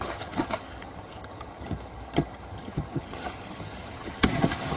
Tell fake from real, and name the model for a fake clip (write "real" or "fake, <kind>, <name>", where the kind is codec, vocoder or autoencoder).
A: fake, vocoder, HiFi-GAN